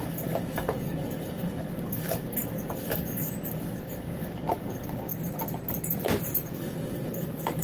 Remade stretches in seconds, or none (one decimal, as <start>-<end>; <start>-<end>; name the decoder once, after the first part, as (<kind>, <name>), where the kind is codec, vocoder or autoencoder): 0.0-5.1 (codec, DAC); 6.5-7.6